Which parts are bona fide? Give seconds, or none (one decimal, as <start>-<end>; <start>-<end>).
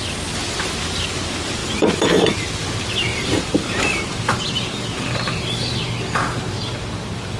0.0-1.6; 2.2-3.1; 5.8-7.4